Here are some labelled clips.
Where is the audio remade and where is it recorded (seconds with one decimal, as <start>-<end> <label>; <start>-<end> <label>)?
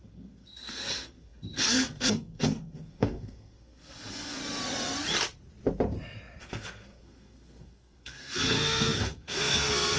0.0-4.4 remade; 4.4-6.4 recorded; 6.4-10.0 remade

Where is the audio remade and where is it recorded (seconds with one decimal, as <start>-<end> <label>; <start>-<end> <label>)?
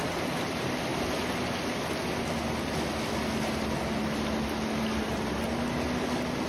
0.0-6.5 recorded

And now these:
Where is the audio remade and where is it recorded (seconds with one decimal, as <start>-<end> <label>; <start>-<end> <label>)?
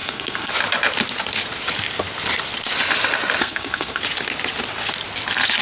0.0-0.5 remade; 0.5-3.4 recorded; 3.4-4.0 remade; 4.0-5.6 recorded